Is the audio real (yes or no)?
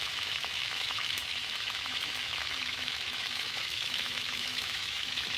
no